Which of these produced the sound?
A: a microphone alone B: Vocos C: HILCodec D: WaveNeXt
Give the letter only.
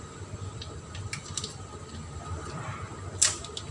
A